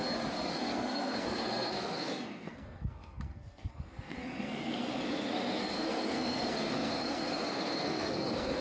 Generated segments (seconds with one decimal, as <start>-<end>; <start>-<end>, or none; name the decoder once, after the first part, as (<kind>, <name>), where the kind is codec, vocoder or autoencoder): 0.5-8.6 (codec, SNAC)